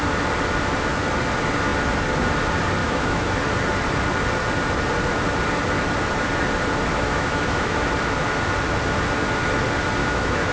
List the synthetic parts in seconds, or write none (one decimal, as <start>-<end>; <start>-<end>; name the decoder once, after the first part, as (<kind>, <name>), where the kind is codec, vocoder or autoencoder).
2.8-3.4 (autoencoder, DAC-VAE); 6.9-7.9; 10.0-10.5